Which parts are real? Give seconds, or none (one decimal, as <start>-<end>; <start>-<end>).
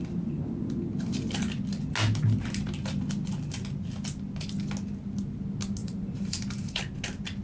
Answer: 0.0-5.8; 6.8-7.4